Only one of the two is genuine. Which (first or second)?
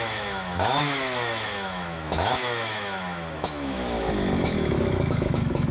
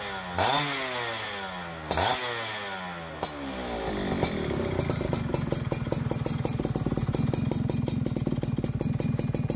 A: second